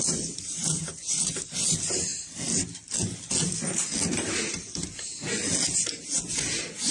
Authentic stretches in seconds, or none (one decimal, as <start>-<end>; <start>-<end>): 0.0-6.9